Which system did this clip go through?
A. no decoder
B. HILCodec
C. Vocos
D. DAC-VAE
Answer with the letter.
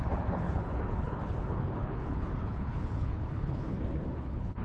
B